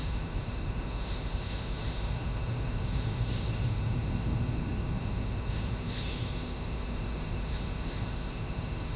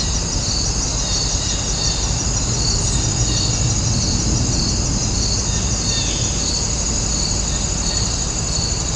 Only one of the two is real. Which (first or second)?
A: second